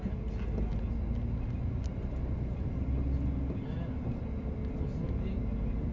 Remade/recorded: recorded